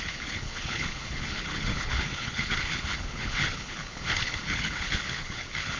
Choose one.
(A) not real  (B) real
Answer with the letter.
A